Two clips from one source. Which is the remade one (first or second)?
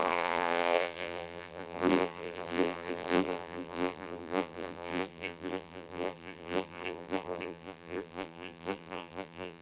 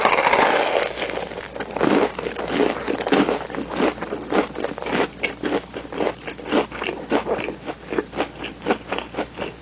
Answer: first